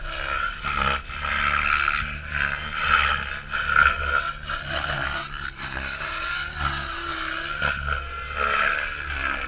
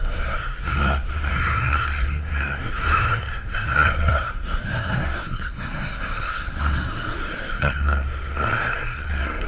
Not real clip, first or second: second